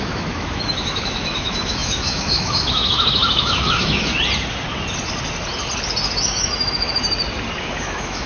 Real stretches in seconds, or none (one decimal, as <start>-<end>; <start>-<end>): 4.1-6.2; 7.0-7.6